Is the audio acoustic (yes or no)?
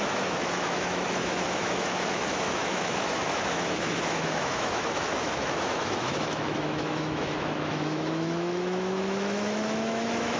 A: no